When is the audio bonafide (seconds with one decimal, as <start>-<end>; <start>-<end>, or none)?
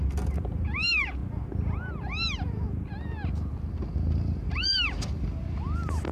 1.2-3.7